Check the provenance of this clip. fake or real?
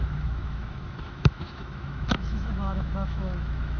fake